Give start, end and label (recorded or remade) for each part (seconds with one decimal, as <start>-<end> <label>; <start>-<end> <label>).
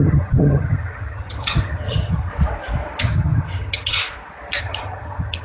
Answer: 0.0-2.3 remade; 2.3-3.0 recorded; 3.0-4.0 remade; 4.0-4.6 recorded; 4.6-5.4 remade